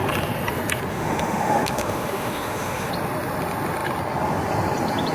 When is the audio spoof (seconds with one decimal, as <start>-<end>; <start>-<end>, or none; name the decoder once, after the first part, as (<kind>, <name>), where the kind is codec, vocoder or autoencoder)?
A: 0.9-2.9 (autoencoder, DAC-VAE)